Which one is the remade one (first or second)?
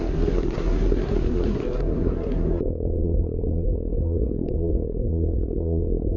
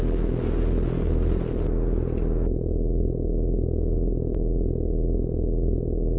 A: first